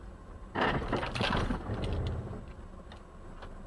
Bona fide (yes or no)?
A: yes